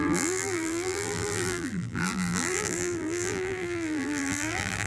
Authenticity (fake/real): fake